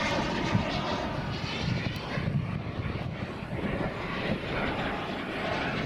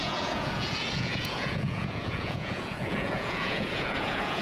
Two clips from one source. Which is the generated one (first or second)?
second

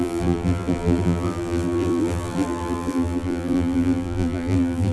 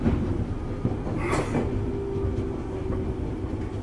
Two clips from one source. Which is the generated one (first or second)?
first